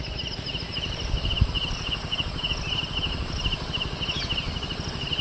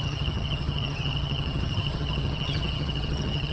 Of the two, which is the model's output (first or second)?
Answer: second